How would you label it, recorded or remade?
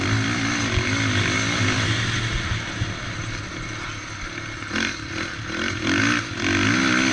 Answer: recorded